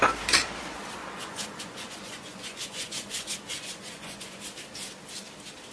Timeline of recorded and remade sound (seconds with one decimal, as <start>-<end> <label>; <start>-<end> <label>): 0.0-1.0 recorded; 1.0-4.4 remade; 4.4-5.7 recorded